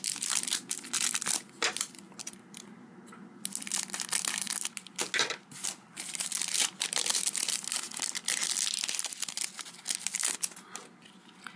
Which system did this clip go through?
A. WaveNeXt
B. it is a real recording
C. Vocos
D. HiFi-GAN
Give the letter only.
B